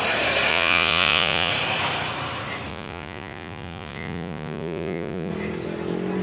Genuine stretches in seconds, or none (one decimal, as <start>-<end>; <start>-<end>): 0.0-0.5; 1.5-2.7; 5.3-6.2